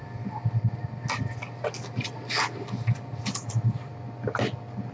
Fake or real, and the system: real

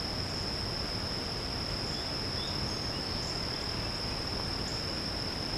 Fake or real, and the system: real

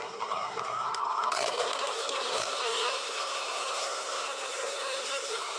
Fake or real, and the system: fake, codec, SNAC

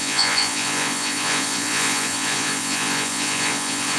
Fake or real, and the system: fake, vocoder, Vocos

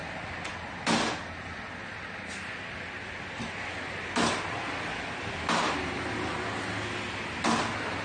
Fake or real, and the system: real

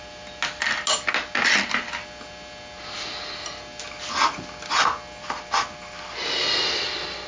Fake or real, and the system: real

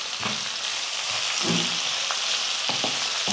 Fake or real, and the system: real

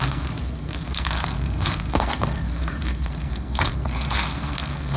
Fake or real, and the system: fake, codec, SNAC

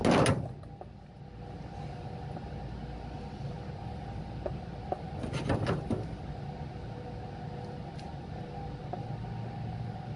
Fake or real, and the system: real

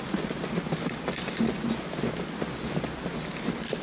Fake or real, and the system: real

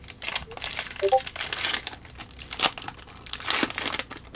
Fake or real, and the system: real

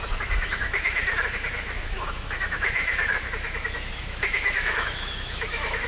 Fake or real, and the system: fake, autoencoder, DAC-VAE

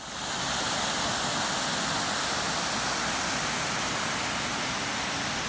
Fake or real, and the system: real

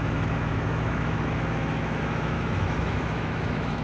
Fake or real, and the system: fake, autoencoder, DAC-VAE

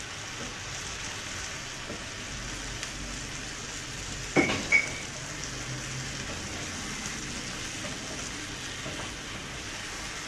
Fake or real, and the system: real